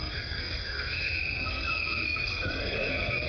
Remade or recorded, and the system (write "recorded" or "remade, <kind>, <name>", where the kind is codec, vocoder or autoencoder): remade, codec, SNAC